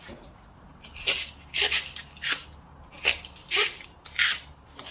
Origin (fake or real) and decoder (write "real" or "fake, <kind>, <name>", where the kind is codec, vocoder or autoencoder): real